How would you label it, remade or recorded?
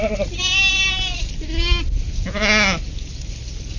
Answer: recorded